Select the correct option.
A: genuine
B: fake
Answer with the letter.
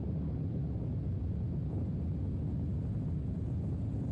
A